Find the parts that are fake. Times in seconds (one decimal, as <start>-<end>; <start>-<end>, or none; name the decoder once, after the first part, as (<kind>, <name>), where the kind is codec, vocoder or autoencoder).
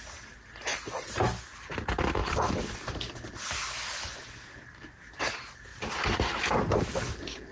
none